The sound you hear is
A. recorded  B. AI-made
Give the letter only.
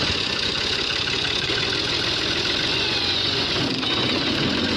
B